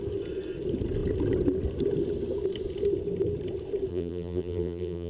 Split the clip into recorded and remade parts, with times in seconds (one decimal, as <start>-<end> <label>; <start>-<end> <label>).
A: 0.0-3.9 recorded; 3.9-5.1 remade